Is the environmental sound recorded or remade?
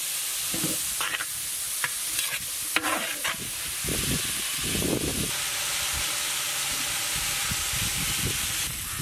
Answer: recorded